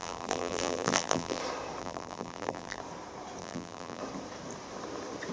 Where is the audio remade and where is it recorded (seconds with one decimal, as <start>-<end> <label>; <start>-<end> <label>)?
0.0-1.4 remade; 1.4-1.8 recorded; 1.8-2.8 remade; 2.8-3.4 recorded; 3.4-4.0 remade; 4.0-5.3 recorded